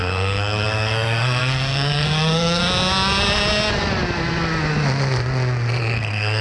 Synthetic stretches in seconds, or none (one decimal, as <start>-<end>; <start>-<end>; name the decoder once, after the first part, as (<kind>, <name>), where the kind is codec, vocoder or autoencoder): 0.0-2.6 (codec, SNAC); 5.8-6.4